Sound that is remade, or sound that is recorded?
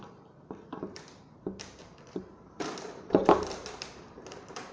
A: remade